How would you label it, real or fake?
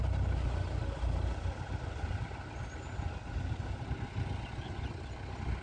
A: real